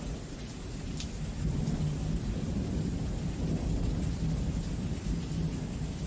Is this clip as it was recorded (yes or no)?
yes